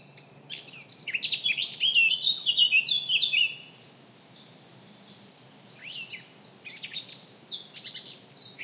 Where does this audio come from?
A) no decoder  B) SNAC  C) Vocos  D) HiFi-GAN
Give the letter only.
A